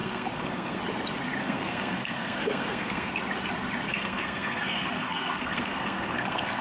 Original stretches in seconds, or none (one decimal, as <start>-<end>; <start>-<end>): 0.8-1.4; 3.1-3.9